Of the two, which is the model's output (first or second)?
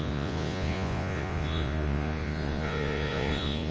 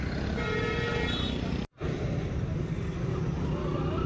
first